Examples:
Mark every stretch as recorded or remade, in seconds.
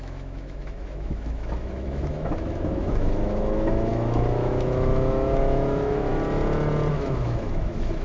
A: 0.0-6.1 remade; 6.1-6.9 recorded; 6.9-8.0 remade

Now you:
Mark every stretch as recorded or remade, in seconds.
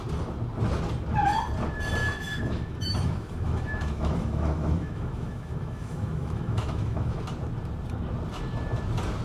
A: 0.0-2.0 recorded; 2.0-7.2 remade; 7.2-9.2 recorded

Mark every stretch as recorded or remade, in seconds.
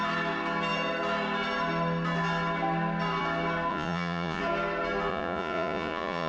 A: 0.0-3.7 recorded; 3.7-4.4 remade; 4.4-5.1 recorded; 5.1-6.3 remade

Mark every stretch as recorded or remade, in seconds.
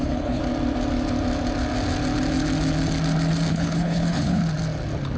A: 0.0-0.4 remade; 0.4-3.5 recorded; 3.5-4.4 remade; 4.4-5.2 recorded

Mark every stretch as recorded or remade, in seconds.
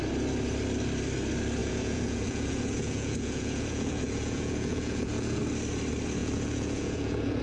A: 0.0-1.6 recorded; 1.6-5.4 remade; 5.4-6.2 recorded; 6.2-7.4 remade